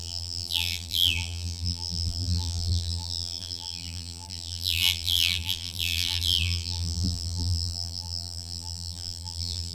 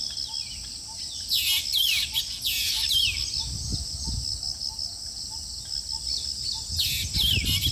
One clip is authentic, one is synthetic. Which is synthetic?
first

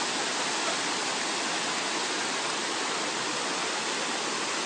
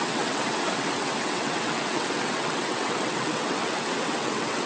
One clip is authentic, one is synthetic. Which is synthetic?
second